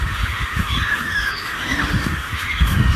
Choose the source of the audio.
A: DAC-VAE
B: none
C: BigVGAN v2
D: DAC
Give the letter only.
A